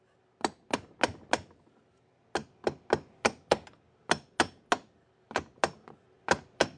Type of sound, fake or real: real